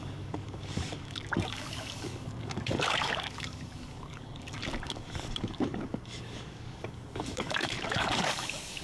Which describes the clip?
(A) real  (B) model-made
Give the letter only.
B